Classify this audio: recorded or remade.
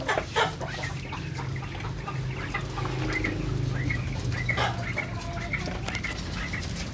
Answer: recorded